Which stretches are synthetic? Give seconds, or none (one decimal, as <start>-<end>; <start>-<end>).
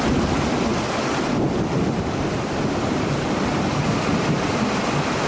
0.7-2.4